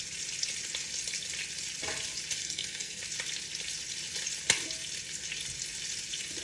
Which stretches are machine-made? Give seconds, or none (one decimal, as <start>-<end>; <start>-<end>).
2.4-3.0